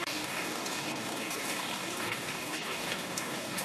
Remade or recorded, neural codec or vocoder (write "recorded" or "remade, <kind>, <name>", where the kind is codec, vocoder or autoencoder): remade, codec, DAC